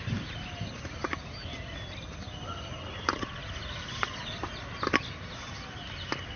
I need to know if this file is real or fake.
real